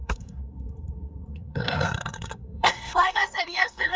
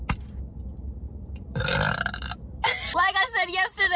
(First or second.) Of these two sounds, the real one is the second